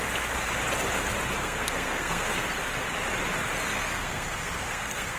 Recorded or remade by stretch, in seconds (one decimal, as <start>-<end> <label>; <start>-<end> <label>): 0.0-1.4 recorded; 1.4-2.5 remade; 2.5-3.7 recorded; 3.7-5.2 remade